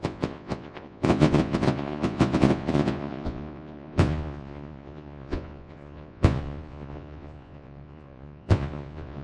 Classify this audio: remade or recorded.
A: remade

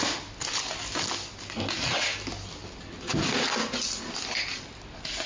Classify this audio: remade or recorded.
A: recorded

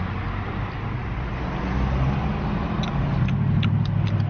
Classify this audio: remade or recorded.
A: recorded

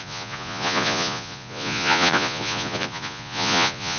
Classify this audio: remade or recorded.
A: remade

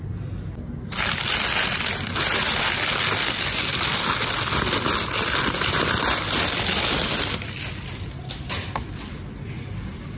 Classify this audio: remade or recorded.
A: recorded